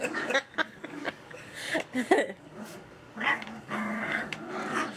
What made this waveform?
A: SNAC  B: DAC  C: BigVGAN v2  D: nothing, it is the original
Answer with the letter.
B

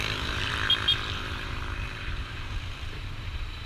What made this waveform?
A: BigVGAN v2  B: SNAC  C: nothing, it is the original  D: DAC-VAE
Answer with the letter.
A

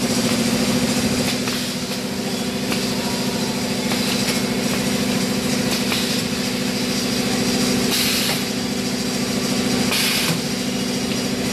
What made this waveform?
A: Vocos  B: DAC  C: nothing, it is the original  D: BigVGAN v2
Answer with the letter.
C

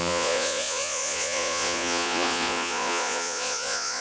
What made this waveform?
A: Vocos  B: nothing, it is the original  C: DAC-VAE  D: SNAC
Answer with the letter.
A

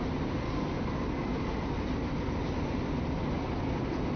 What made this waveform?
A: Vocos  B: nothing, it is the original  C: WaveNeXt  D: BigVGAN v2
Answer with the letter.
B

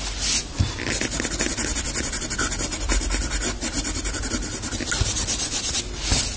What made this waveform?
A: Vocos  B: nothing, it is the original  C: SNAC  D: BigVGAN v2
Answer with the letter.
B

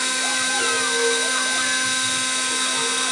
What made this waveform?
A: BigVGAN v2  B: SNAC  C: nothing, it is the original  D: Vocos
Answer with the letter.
C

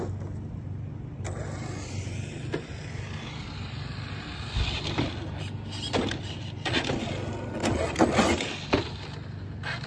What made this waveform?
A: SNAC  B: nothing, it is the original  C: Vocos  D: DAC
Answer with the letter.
B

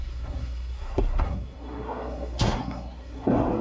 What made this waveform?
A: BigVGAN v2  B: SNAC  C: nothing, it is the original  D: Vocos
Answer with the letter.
B